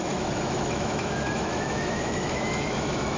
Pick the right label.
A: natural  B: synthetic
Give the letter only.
B